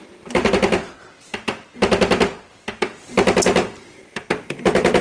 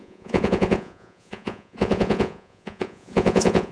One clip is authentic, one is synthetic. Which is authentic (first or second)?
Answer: first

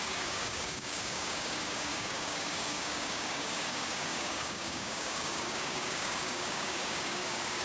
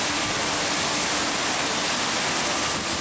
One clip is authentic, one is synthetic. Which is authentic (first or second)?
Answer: second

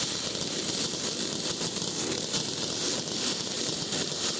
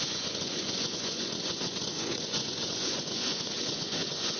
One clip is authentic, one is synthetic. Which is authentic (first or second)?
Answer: first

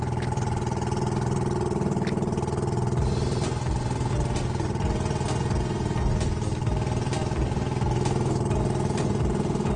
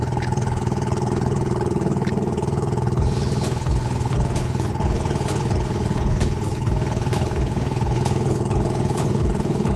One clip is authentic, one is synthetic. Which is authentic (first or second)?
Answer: first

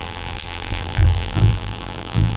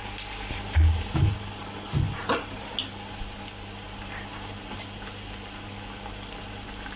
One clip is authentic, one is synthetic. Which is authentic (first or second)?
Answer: second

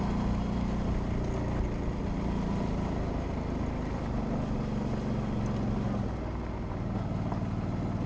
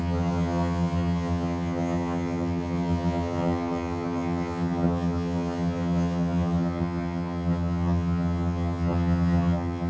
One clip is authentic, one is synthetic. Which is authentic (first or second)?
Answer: first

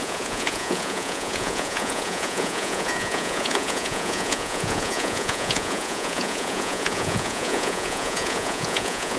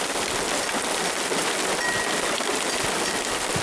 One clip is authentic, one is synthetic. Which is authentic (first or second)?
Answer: second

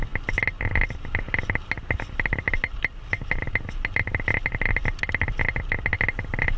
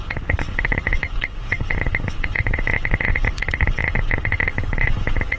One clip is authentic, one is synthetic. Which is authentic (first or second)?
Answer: first